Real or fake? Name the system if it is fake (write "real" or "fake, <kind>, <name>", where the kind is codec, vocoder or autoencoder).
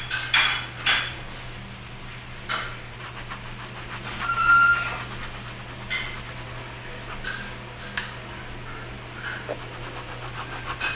real